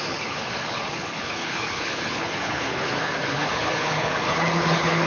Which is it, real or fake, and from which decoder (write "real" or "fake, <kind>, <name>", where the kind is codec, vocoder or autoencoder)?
fake, codec, HILCodec